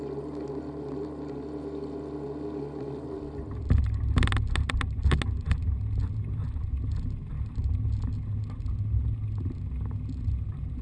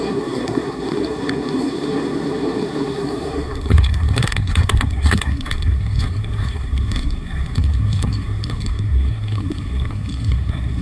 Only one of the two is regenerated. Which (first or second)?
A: second